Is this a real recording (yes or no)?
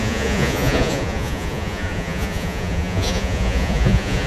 no